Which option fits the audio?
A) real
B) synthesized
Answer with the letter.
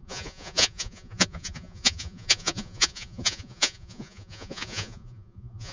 B